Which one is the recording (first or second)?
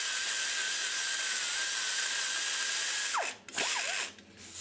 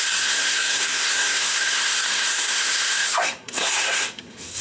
first